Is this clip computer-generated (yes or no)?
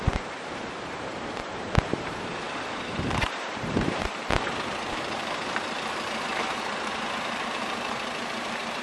yes